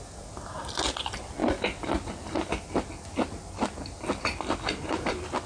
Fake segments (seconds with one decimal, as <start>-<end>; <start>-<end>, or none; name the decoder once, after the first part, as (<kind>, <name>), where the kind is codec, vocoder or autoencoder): none